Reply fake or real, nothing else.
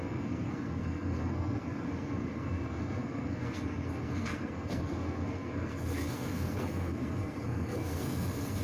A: fake